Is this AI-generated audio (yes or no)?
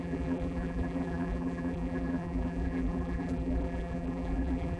yes